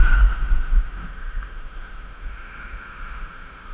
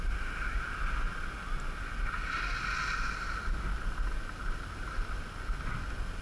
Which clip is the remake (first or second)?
first